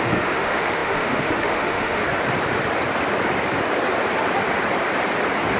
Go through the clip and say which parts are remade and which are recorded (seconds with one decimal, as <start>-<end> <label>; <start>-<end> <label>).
0.0-2.0 remade; 2.0-5.6 recorded